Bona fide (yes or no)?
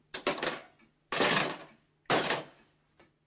yes